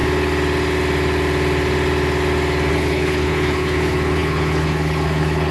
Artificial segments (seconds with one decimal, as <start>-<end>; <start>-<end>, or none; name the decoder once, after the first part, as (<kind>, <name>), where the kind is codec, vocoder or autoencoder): 2.7-5.5 (codec, HILCodec)